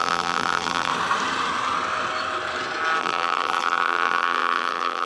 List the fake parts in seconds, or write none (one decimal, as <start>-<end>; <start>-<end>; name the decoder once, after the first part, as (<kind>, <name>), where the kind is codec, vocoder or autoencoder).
0.0-0.9 (vocoder, BigVGAN v2); 3.0-5.1